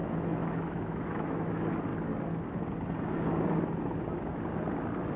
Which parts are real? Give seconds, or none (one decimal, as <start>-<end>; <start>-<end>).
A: 1.5-5.2